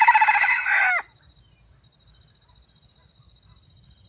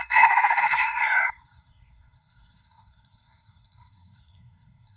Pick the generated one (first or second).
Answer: second